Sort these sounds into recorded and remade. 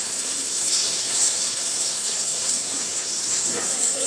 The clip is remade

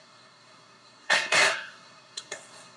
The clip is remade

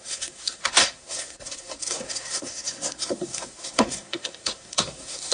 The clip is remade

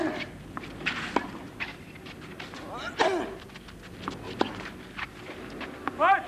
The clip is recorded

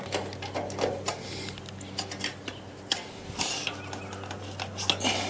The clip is recorded